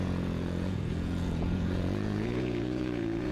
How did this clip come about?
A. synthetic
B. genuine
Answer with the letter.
A